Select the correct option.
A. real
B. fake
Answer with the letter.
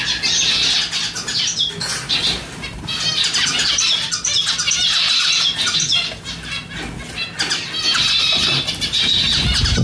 A